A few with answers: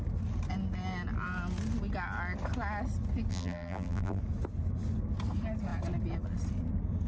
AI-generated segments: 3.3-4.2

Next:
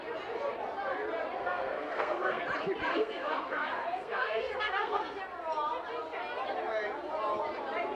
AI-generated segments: 1.4-2.4; 2.9-5.2

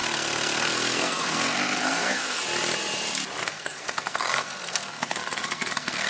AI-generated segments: 0.0-2.4; 3.4-6.1

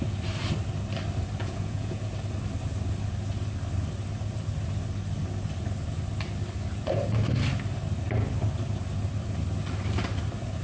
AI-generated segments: 1.4-2.0

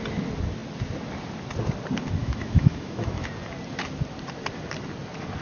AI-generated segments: 2.2-3.3

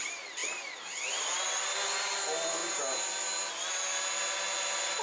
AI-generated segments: none

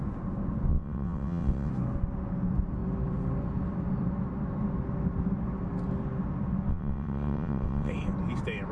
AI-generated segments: 0.7-1.7; 6.7-7.9